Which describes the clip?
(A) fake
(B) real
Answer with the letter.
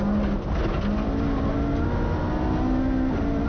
B